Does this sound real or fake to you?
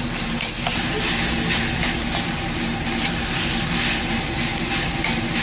real